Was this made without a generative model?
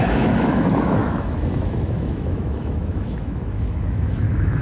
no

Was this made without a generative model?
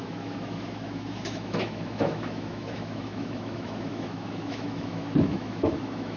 no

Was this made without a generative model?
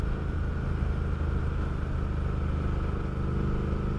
yes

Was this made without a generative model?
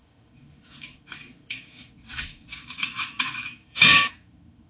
no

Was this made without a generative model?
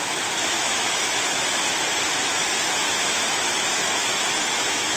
no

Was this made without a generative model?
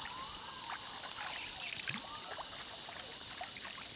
yes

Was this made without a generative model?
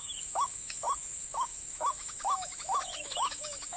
no